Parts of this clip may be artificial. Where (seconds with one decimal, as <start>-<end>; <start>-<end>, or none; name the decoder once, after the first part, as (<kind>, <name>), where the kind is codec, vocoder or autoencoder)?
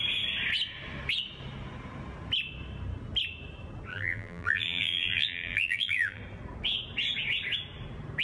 3.9-6.2 (vocoder, BigVGAN v2)